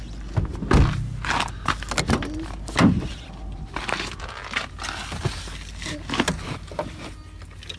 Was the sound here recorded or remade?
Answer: recorded